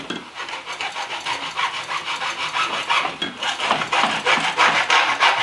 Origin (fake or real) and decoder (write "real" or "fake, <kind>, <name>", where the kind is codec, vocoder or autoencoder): real